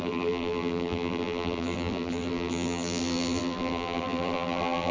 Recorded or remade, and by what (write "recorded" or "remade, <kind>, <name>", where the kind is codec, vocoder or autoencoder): remade, vocoder, BigVGAN v2